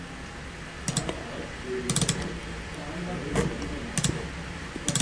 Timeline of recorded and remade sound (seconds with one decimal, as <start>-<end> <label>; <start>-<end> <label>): 0.0-5.0 recorded